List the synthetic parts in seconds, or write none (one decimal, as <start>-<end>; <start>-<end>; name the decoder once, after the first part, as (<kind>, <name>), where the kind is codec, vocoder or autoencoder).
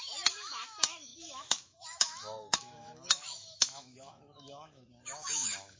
0.0-5.8 (autoencoder, DAC-VAE)